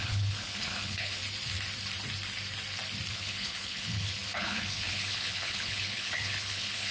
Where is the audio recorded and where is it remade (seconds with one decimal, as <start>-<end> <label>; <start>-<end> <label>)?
0.0-1.2 remade; 1.2-3.1 recorded; 3.1-6.9 remade